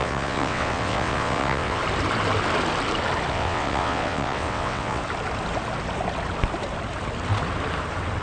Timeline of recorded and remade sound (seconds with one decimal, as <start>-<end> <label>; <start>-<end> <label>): 0.0-1.8 remade; 1.8-3.3 recorded; 3.3-5.0 remade; 5.0-8.2 recorded